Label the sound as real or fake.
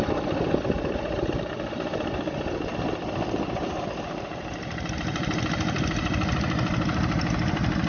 fake